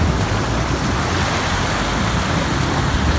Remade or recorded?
recorded